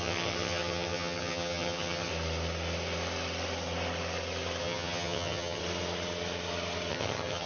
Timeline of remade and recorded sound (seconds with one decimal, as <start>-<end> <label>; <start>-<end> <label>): 0.0-2.1 remade; 2.1-4.6 recorded; 4.6-5.6 remade; 5.6-6.9 recorded; 6.9-7.5 remade